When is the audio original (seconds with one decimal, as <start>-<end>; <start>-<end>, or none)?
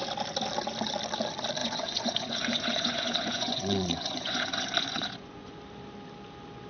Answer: 0.0-1.6; 5.6-6.7